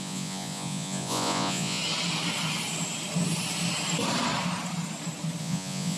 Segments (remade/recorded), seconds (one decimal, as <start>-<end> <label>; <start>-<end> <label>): 0.0-1.8 remade; 1.8-5.4 recorded; 5.4-6.0 remade